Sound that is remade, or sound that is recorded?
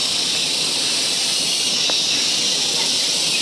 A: recorded